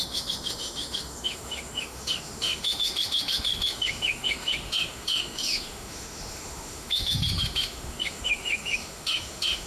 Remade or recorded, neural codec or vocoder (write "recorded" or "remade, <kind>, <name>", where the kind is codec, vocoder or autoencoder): remade, autoencoder, DAC-VAE